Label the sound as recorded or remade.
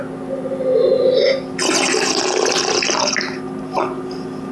recorded